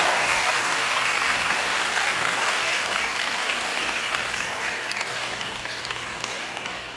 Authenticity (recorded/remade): remade